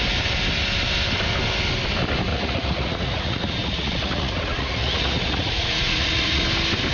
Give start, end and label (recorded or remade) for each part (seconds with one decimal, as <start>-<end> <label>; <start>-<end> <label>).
0.0-2.3 recorded; 2.3-6.4 remade; 6.4-6.9 recorded